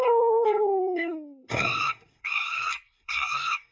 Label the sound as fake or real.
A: fake